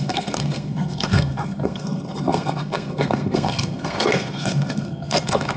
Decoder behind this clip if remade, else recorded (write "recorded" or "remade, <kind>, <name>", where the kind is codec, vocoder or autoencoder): remade, codec, SNAC